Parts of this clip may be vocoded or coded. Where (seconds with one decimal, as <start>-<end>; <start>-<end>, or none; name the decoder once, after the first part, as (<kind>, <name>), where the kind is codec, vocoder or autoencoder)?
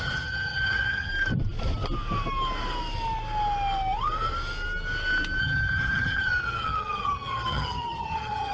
0.0-1.1 (vocoder, HiFi-GAN); 5.4-8.5